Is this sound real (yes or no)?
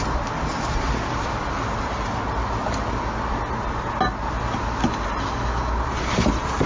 yes